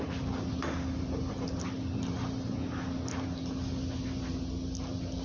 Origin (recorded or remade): recorded